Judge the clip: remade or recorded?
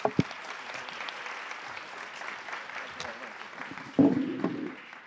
recorded